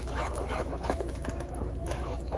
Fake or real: fake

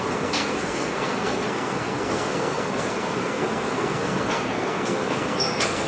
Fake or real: fake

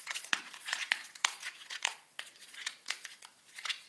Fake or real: fake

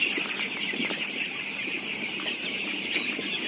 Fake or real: real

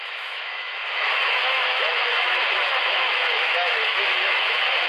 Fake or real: fake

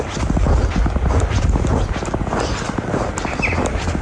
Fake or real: real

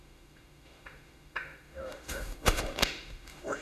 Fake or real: fake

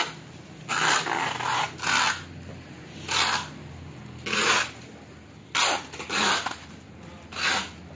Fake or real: real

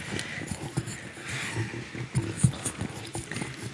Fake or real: real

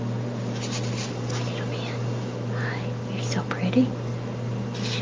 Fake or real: real